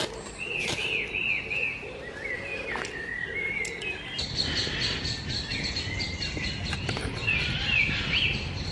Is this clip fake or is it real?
real